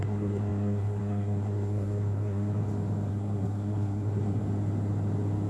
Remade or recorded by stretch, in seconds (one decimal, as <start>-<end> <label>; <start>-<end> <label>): 0.0-2.6 remade; 2.6-3.1 recorded; 3.1-4.4 remade; 4.4-5.5 recorded